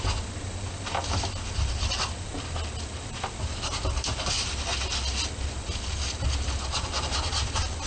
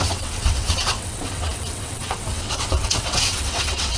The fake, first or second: second